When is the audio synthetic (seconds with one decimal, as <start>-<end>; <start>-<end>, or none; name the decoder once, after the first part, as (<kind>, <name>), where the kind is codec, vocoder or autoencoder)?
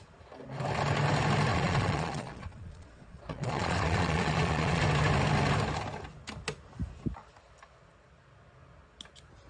1.5-4.8 (vocoder, Vocos)